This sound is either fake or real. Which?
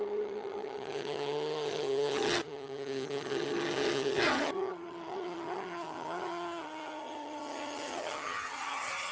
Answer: fake